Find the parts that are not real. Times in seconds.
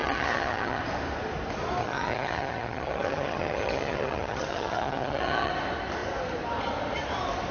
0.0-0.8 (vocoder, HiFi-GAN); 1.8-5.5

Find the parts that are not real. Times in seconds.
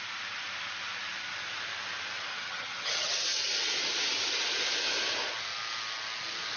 2.3-3.1 (vocoder, HiFi-GAN)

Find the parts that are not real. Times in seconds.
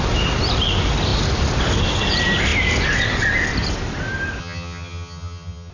4.4-5.7 (vocoder, HiFi-GAN)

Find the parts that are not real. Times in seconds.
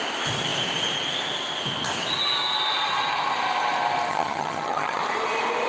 4.1-5.0 (vocoder, HiFi-GAN)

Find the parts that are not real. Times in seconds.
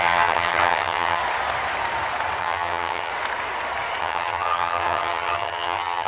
0.0-1.2 (vocoder, HiFi-GAN); 2.4-3.1; 4.0-6.1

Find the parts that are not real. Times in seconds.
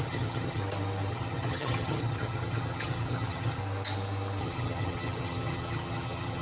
0.0-0.6 (vocoder, HiFi-GAN); 1.1-3.6; 4.4-6.4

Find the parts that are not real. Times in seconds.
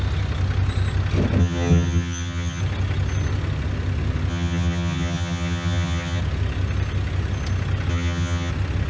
1.4-2.6 (vocoder, HiFi-GAN); 4.3-6.2; 7.9-8.5